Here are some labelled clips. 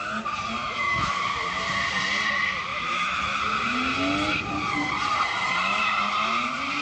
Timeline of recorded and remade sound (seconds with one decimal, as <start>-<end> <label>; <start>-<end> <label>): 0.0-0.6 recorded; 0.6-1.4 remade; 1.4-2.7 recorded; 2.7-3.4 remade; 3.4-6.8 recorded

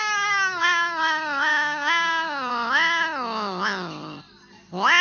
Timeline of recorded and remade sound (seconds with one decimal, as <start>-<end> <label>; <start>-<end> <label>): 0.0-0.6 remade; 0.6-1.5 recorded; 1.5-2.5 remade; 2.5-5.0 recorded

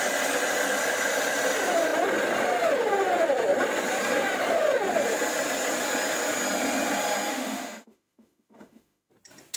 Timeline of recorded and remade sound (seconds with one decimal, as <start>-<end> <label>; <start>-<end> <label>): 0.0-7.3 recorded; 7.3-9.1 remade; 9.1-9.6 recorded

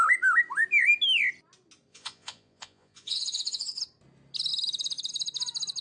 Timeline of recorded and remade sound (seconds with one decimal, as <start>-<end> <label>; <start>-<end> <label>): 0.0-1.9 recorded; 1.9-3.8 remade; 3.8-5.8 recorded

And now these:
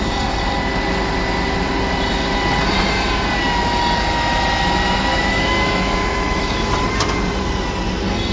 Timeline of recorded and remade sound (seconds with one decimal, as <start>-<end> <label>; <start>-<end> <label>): 0.0-5.1 recorded; 5.1-6.7 remade; 6.7-8.3 recorded